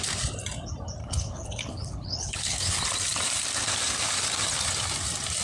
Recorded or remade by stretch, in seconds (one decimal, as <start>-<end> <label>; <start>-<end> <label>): 0.0-1.0 recorded; 1.0-2.8 remade; 2.8-5.4 recorded